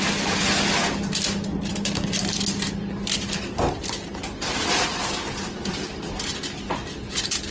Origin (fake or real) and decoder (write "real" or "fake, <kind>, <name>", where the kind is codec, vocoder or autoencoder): real